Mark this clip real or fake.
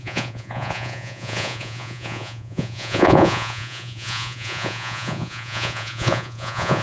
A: fake